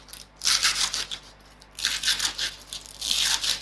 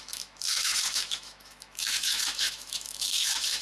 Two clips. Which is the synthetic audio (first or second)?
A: second